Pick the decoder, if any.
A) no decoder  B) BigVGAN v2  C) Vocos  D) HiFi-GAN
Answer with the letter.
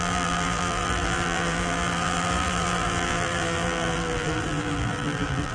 B